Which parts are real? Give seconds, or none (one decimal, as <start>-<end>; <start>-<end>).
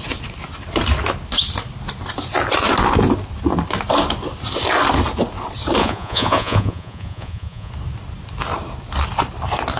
0.0-5.8; 7.7-9.8